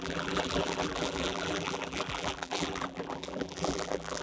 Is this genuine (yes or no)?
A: no